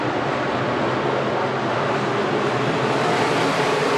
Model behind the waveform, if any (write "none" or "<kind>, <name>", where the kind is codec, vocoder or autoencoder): none